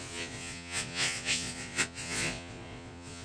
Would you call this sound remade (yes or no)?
yes